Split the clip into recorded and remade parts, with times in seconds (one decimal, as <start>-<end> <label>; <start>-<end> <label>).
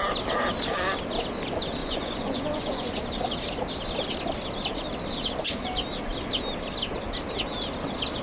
0.0-1.8 recorded; 1.8-3.0 remade; 3.0-8.2 recorded